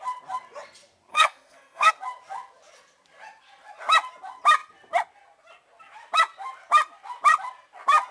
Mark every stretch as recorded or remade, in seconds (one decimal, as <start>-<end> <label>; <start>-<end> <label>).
0.0-1.1 recorded; 1.1-1.9 remade; 1.9-8.1 recorded